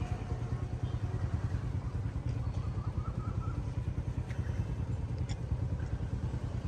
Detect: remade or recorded recorded